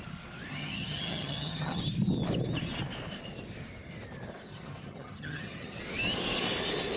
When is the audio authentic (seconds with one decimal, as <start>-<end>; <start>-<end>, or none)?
0.0-0.5; 1.8-4.5; 5.8-7.0